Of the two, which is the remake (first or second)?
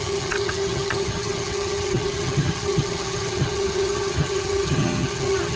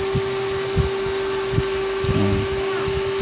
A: first